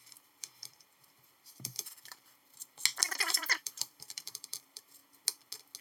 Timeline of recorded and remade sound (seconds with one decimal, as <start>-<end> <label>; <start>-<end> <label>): 0.0-2.6 remade; 2.6-3.1 recorded; 3.1-5.0 remade; 5.0-5.8 recorded